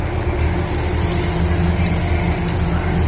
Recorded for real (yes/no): yes